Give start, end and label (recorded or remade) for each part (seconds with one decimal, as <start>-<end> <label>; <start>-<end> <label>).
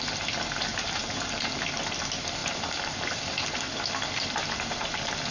0.0-0.7 recorded; 0.7-1.5 remade; 1.5-2.4 recorded; 2.4-3.1 remade; 3.1-5.3 recorded